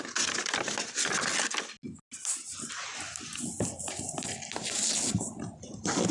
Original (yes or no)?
yes